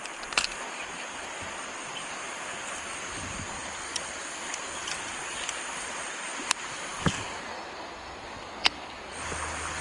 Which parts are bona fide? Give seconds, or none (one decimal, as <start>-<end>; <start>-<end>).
0.0-9.8